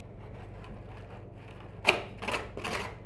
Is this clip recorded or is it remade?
recorded